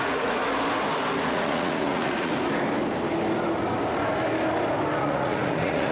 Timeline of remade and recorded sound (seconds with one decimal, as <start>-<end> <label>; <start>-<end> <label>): 0.0-0.4 remade; 0.4-1.2 recorded; 1.2-2.3 remade; 2.3-5.0 recorded; 5.0-5.9 remade